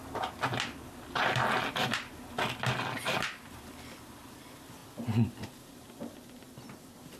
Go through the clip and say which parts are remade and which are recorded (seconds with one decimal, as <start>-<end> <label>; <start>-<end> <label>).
0.0-3.0 recorded; 3.0-7.2 remade